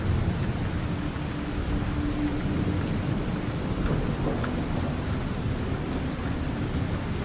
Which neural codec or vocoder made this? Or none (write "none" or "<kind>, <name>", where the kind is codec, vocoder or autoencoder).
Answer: none